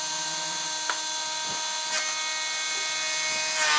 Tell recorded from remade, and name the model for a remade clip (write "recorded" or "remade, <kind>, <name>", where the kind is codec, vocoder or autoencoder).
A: recorded